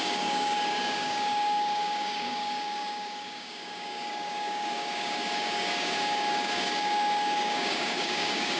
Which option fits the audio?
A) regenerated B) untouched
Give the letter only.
A